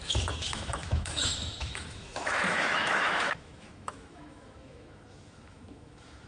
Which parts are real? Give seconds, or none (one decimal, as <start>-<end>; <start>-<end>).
none